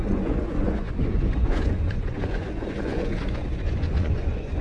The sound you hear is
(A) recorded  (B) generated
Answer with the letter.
B